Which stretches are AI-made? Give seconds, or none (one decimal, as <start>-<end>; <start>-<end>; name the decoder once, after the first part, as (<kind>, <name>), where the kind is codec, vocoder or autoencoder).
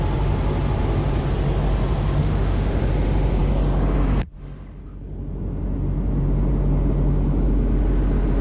2.2-2.8 (autoencoder, DAC-VAE)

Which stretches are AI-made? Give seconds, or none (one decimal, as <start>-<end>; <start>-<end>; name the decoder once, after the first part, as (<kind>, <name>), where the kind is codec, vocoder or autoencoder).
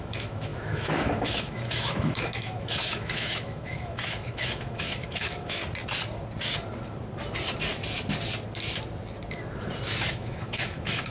0.0-5.6 (autoencoder, DAC-VAE); 10.1-11.1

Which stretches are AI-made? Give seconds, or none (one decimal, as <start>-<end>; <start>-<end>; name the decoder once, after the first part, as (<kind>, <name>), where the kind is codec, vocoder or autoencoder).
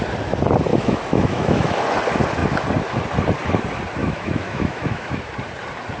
0.7-1.8 (autoencoder, DAC-VAE); 4.0-5.3